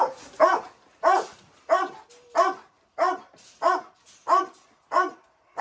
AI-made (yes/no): no